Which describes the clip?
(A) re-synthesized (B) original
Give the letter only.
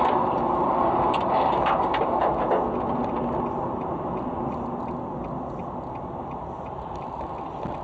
B